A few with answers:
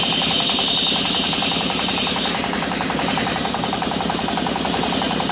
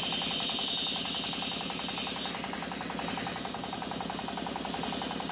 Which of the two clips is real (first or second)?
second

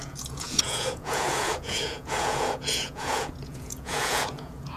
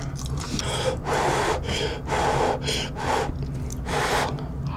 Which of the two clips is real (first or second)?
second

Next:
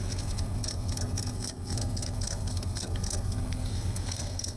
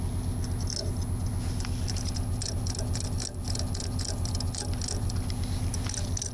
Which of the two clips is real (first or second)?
second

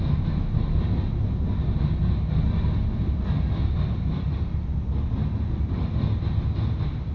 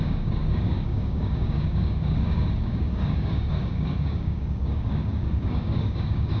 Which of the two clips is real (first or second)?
first